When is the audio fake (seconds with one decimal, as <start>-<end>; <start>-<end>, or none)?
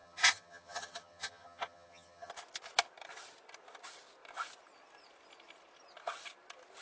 0.0-2.3